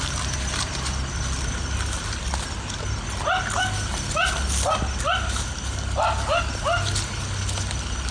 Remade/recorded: recorded